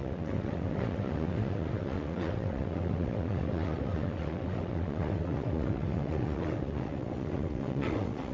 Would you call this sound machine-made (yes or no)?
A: yes